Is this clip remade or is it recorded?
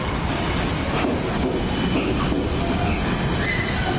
recorded